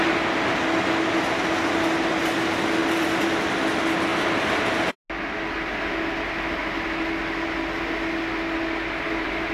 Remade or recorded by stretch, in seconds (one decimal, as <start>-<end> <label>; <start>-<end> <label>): 0.0-2.8 recorded; 2.8-3.5 remade; 3.5-4.1 recorded; 4.1-4.6 remade; 4.6-9.5 recorded